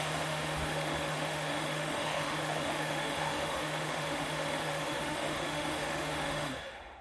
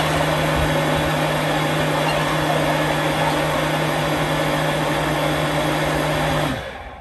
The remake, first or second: first